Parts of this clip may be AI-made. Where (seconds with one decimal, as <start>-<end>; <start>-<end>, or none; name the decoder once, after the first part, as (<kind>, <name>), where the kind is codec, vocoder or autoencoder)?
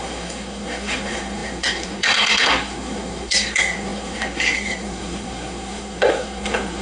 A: 0.0-6.8 (codec, SNAC)